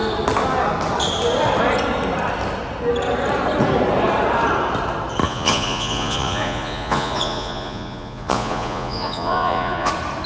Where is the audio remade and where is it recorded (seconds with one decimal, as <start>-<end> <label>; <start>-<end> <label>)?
0.0-5.2 recorded; 5.2-9.9 remade; 9.9-10.3 recorded